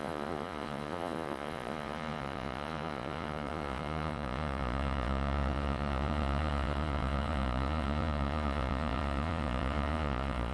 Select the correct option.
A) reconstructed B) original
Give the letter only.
A